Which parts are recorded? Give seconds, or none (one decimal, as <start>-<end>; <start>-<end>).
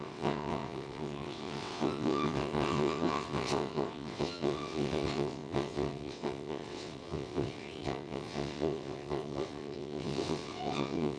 none